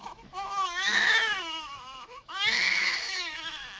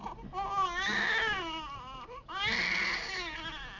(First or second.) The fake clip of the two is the first